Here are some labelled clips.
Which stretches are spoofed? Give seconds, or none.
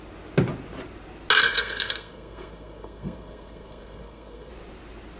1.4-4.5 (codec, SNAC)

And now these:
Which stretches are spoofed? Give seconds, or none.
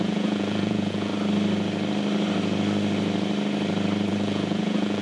0.0-1.1 (vocoder, Vocos); 4.1-5.0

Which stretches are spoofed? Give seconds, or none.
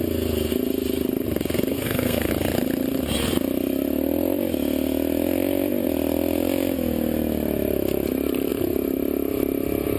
1.7-2.3 (codec, SNAC)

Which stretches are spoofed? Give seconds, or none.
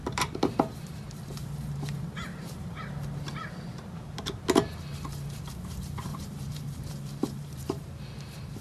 0.0-2.8 (vocoder, BigVGAN v2); 6.1-7.8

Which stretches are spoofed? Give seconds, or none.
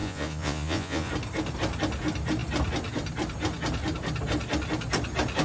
0.0-1.1 (vocoder, Vocos)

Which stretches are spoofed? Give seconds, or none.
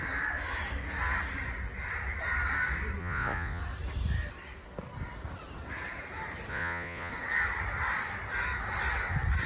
3.0-3.6 (vocoder, Vocos); 6.5-7.1